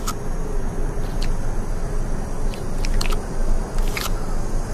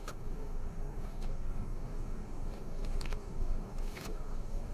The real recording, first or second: first